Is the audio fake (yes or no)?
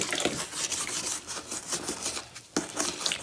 no